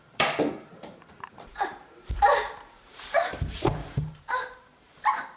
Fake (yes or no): yes